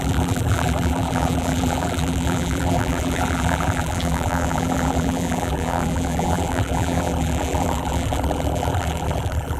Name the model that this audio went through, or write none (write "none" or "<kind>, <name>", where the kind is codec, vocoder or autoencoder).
vocoder, BigVGAN v2